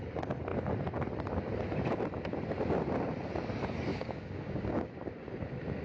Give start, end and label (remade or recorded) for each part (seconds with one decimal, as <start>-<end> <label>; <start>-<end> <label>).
0.0-3.9 recorded; 3.9-4.9 remade; 4.9-5.8 recorded